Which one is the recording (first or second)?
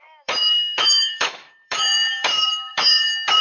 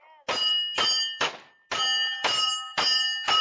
second